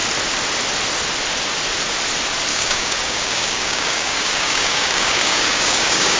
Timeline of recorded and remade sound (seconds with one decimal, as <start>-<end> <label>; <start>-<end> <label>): 0.0-2.5 recorded; 2.5-6.2 remade